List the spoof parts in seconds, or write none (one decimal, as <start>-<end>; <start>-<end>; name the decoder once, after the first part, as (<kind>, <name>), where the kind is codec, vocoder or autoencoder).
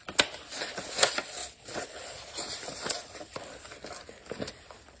none